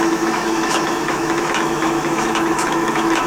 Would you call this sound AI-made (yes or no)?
yes